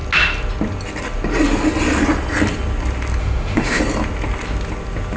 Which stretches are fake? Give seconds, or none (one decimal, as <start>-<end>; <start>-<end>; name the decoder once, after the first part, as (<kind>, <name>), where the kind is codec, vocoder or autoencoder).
3.2-3.8 (autoencoder, DAC-VAE)